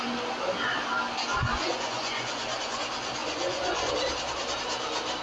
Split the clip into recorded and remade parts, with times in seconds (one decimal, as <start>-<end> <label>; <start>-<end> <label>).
0.0-1.5 recorded; 1.5-2.8 remade; 2.8-3.2 recorded; 3.2-3.9 remade; 3.9-5.2 recorded